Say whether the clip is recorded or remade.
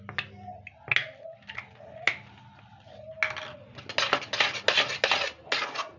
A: recorded